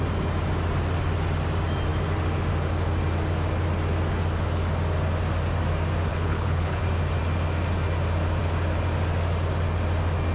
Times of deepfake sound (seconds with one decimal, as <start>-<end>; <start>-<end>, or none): 6.1-6.8